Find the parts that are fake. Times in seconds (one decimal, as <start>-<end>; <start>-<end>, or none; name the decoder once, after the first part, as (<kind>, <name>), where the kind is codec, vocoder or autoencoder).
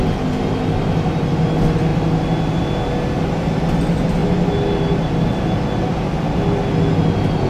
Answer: none